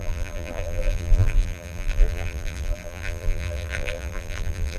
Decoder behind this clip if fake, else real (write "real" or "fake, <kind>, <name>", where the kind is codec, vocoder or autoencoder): fake, vocoder, BigVGAN v2